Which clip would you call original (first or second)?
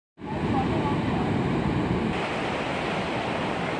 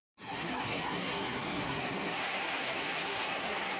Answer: first